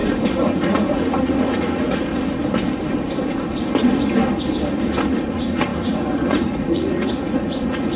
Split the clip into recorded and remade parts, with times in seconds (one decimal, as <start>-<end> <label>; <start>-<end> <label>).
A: 0.0-0.5 recorded; 0.5-2.1 remade; 2.1-5.1 recorded; 5.1-8.0 remade